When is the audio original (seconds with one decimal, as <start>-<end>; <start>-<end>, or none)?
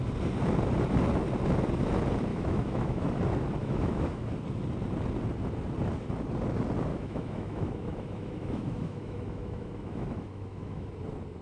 0.0-2.3; 3.1-3.6; 4.3-6.9; 10.9-11.4